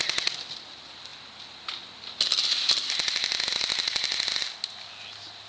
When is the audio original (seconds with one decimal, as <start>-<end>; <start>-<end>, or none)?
0.0-5.5